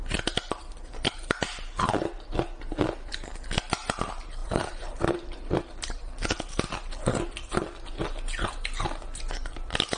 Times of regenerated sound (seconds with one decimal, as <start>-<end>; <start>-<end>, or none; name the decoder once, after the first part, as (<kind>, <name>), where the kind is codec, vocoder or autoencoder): 4.4-5.6 (vocoder, BigVGAN v2)